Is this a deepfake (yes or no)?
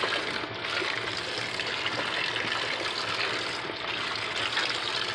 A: no